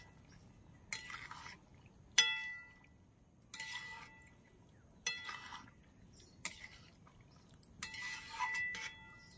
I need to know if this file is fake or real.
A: real